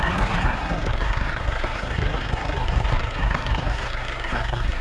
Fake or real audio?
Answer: fake